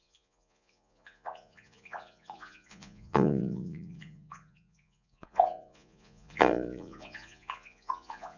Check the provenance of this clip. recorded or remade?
remade